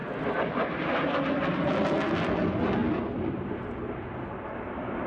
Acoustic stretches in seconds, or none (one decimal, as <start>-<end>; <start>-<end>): 0.0-5.1